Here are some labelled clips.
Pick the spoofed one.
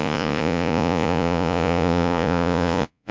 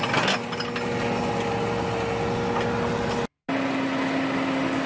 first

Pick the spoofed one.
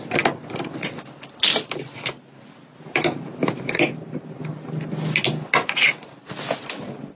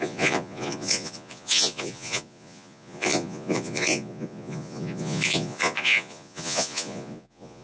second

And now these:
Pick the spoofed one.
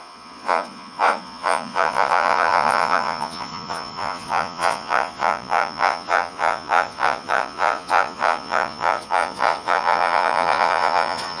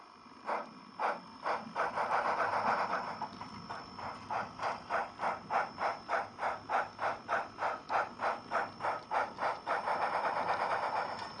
first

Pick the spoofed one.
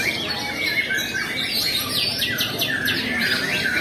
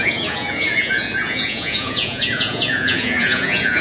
second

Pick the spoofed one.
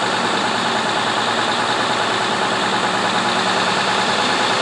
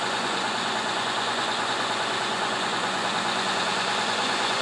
second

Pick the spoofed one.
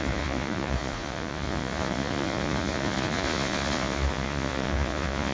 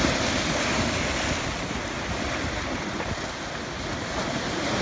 first